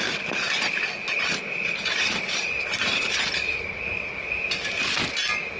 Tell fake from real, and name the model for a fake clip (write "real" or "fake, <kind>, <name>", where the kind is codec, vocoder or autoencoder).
real